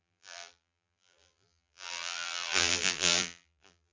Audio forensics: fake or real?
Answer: fake